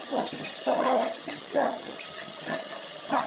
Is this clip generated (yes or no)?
yes